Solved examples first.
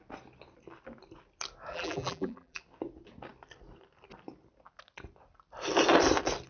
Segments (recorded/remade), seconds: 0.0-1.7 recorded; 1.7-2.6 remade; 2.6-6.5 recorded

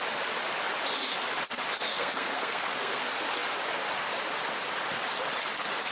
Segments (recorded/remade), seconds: 0.0-1.9 recorded; 1.9-3.0 remade; 3.0-5.9 recorded

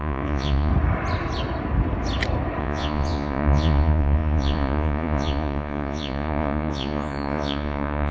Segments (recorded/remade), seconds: 0.0-0.7 remade; 0.7-2.6 recorded; 2.6-8.1 remade

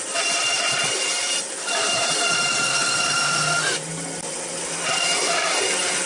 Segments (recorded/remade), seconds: 0.0-6.1 recorded